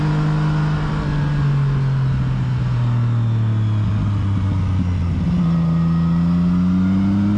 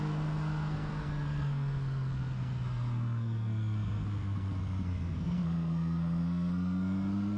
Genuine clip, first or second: first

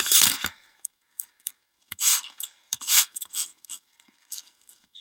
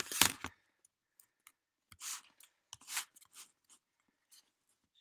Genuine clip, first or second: second